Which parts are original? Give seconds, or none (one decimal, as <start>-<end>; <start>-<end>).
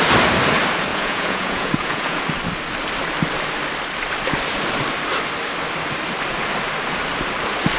0.0-0.9; 2.2-7.8